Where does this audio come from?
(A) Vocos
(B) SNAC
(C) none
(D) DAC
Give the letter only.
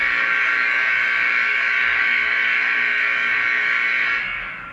D